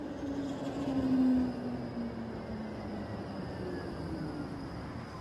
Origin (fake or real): real